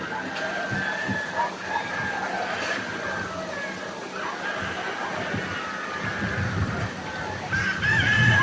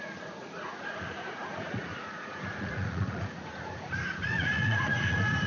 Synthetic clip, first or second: second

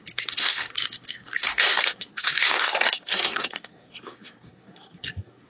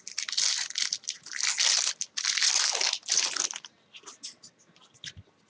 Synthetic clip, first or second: first